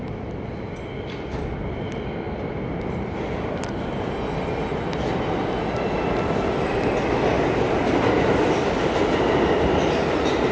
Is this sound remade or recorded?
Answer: recorded